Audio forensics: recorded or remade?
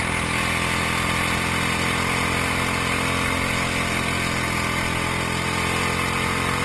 recorded